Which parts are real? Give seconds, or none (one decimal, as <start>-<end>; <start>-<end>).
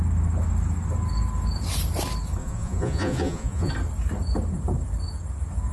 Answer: 0.0-2.4; 3.7-5.7